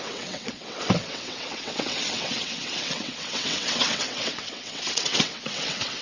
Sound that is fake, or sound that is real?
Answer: fake